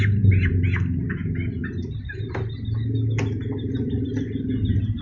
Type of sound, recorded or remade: recorded